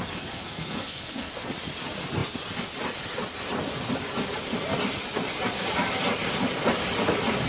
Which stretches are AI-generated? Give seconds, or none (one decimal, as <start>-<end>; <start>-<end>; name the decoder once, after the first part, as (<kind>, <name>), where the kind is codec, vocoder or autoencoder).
0.0-1.3 (codec, SNAC)

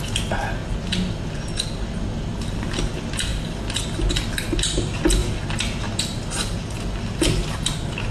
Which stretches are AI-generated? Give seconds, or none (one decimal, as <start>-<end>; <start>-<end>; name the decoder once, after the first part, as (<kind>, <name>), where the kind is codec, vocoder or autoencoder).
none

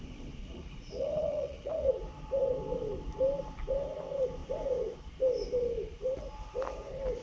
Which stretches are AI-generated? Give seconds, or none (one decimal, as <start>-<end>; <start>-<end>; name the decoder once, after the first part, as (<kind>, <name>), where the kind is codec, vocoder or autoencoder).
0.4-1.9 (vocoder, Vocos)

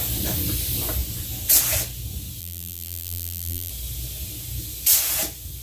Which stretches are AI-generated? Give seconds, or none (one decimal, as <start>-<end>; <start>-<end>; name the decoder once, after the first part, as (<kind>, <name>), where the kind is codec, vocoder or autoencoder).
2.4-3.7 (vocoder, BigVGAN v2)